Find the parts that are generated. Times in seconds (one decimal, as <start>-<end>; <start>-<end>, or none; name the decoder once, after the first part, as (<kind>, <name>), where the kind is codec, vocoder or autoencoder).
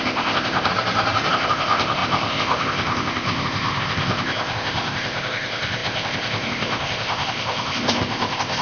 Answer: 0.0-0.7 (codec, ZipCodec); 1.3-8.6